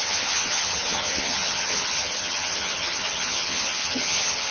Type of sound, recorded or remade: remade